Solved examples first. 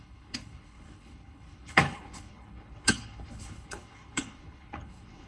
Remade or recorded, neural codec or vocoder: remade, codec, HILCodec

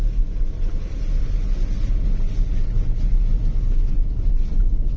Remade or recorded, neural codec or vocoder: recorded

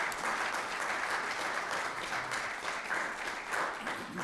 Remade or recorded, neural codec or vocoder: recorded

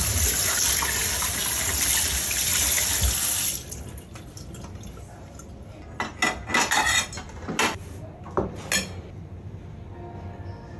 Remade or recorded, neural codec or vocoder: recorded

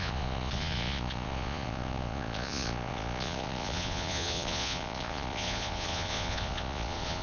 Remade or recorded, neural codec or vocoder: remade, vocoder, Vocos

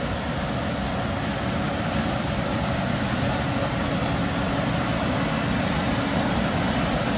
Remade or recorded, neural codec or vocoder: recorded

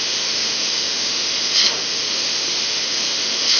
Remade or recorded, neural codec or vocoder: remade, autoencoder, DAC-VAE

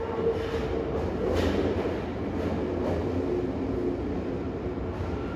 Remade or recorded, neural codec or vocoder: recorded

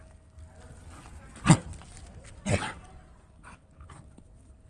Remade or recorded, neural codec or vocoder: recorded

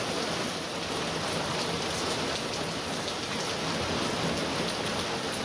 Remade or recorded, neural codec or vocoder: recorded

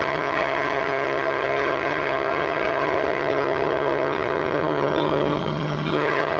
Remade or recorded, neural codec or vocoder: remade, vocoder, HiFi-GAN